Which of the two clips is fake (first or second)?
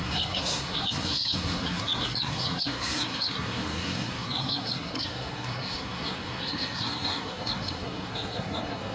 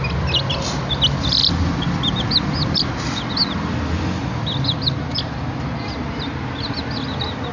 first